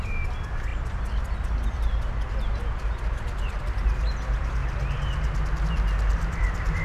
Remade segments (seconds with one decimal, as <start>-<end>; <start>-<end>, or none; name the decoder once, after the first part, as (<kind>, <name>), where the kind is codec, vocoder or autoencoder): none